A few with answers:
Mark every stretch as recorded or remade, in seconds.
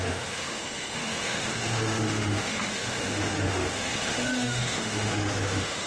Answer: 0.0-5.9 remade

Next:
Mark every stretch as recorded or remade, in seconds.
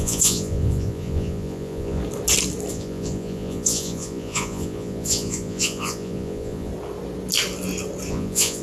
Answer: 0.0-2.0 remade; 2.0-2.7 recorded; 2.7-6.7 remade; 6.7-8.1 recorded; 8.1-8.6 remade